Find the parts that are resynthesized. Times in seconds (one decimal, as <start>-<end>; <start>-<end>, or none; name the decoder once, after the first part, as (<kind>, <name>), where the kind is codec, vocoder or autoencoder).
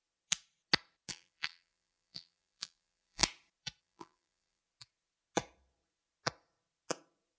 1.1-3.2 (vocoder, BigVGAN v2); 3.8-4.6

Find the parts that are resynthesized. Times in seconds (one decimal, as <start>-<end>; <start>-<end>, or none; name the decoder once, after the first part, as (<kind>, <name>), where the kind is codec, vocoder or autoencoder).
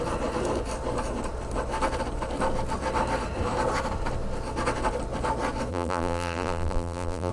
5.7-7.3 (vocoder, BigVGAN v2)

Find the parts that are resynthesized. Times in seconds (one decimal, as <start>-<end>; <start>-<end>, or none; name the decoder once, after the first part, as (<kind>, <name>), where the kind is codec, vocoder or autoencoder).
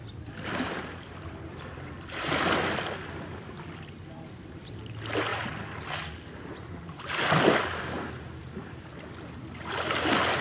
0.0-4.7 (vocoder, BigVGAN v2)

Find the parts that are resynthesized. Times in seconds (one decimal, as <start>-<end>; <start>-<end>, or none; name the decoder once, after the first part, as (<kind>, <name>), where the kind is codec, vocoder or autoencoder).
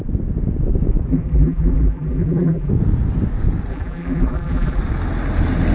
1.1-2.7 (vocoder, BigVGAN v2); 3.7-4.8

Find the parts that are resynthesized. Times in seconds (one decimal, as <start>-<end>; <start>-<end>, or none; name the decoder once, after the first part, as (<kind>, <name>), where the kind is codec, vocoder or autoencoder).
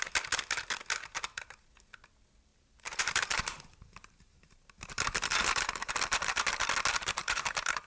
2.5-5.9 (vocoder, BigVGAN v2); 7.2-7.9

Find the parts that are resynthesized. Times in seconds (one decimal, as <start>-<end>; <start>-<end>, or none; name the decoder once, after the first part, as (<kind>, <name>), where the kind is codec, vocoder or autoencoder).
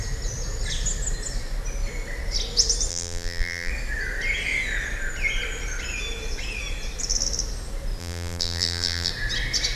2.9-3.7 (vocoder, BigVGAN v2); 8.0-9.1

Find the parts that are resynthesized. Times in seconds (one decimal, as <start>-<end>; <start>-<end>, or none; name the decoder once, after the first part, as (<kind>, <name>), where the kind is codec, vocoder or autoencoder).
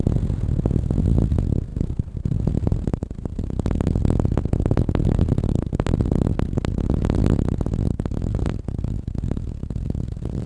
1.7-3.5 (vocoder, BigVGAN v2)